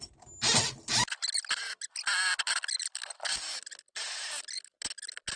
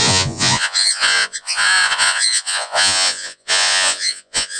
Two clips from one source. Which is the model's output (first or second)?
second